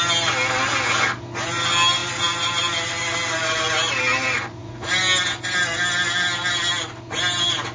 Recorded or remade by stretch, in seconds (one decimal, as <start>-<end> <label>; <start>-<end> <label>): 0.0-2.0 recorded; 2.0-3.9 remade; 3.9-7.7 recorded

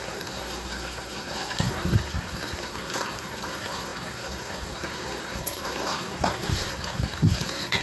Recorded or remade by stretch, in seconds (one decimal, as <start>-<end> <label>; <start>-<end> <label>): 0.0-7.8 remade

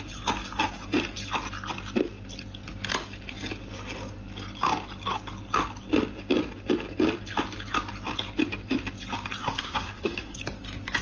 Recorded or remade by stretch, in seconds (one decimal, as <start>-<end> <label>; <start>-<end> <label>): 0.0-9.4 recorded; 9.4-10.4 remade; 10.4-11.0 recorded